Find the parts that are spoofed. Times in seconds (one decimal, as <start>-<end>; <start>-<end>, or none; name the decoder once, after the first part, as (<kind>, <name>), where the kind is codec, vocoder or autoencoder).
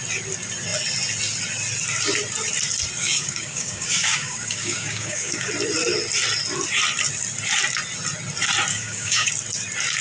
3.0-5.5 (codec, DAC); 8.7-9.3